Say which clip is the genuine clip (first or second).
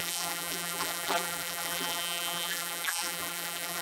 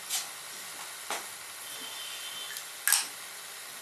second